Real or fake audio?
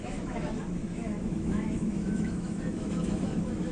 fake